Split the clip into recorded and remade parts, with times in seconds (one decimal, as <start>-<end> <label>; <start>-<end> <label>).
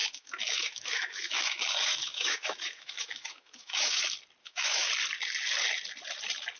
0.0-4.0 remade; 4.0-4.4 recorded; 4.4-4.9 remade; 4.9-6.6 recorded